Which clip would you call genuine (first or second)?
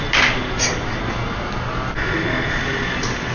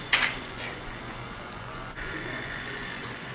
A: first